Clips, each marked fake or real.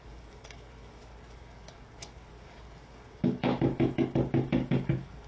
fake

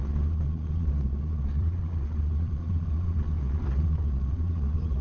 fake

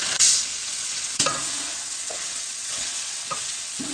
fake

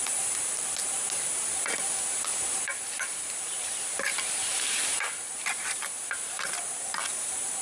fake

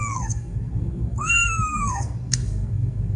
fake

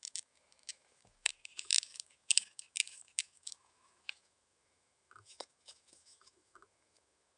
fake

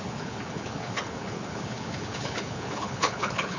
fake